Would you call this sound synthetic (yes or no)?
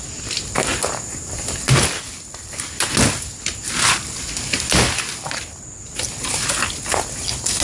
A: no